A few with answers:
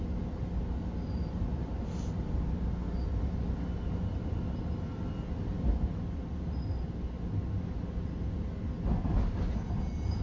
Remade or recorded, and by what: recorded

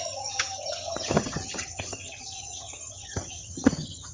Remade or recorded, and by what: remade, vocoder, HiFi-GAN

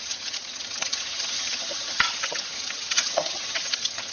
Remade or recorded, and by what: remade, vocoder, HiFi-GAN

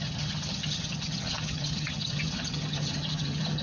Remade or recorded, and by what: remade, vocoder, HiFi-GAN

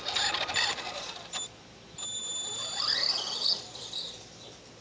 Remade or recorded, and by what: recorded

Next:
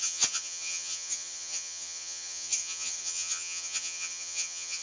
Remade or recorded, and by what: remade, vocoder, HiFi-GAN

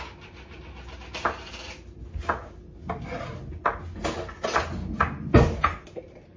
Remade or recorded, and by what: recorded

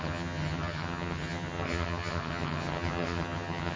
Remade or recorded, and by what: remade, vocoder, HiFi-GAN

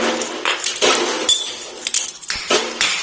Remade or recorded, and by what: recorded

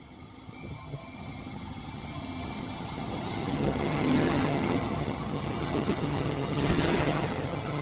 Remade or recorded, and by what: remade, vocoder, HiFi-GAN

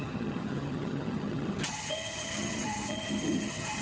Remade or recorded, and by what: remade, vocoder, HiFi-GAN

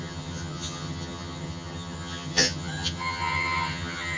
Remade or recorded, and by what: remade, vocoder, HiFi-GAN